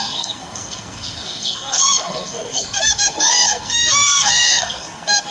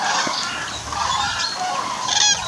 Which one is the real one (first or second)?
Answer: second